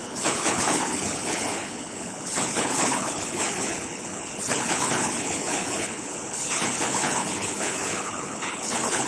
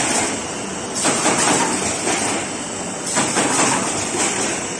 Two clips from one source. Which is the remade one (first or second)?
first